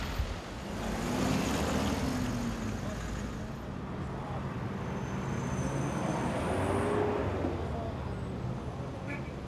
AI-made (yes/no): no